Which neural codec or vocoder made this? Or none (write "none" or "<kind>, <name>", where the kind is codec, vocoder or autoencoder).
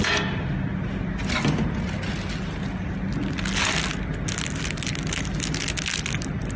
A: none